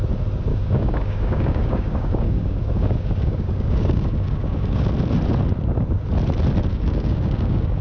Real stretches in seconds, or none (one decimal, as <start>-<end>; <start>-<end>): 0.0-0.5; 4.9-6.7